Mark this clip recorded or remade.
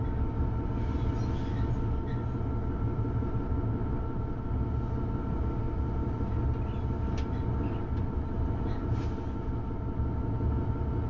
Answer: recorded